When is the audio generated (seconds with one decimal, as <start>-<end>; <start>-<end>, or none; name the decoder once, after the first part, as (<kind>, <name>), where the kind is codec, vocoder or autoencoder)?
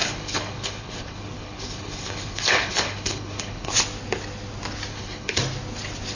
0.0-3.7 (codec, HILCodec); 4.9-5.4